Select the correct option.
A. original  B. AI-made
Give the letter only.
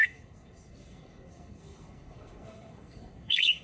B